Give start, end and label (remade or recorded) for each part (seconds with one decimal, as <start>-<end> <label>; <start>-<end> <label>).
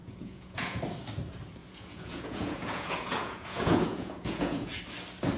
0.0-0.8 remade; 0.8-1.6 recorded; 1.6-4.8 remade; 4.8-5.4 recorded